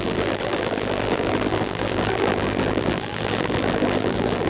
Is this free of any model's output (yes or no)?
no